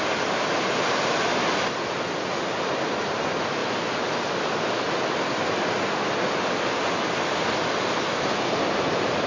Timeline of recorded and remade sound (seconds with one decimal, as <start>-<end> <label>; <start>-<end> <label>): 0.0-1.3 remade; 1.3-2.8 recorded; 2.8-3.6 remade; 3.6-8.6 recorded; 8.6-9.3 remade